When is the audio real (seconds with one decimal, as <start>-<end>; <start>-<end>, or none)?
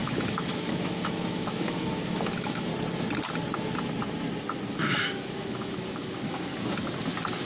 2.7-4.8; 6.5-7.4